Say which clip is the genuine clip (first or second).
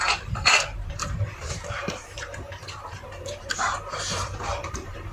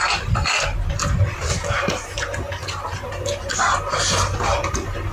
second